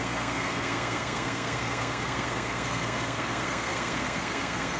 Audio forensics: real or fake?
fake